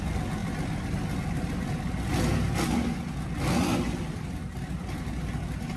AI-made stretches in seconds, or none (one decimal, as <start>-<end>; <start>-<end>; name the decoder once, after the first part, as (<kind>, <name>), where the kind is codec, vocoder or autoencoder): none